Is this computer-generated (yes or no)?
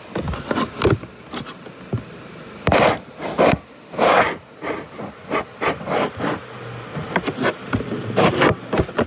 no